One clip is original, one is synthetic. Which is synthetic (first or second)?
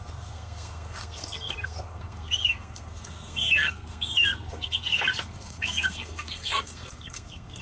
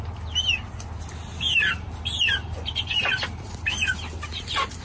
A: first